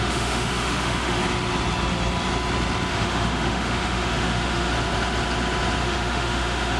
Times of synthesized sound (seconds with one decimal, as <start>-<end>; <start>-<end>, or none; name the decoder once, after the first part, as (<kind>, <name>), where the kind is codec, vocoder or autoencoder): 0.0-1.2 (autoencoder, DAC-VAE); 2.9-4.7; 5.8-6.8